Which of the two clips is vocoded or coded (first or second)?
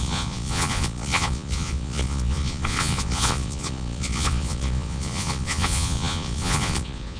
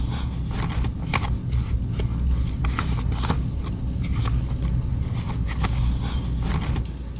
first